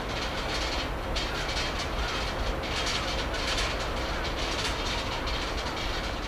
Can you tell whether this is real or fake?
real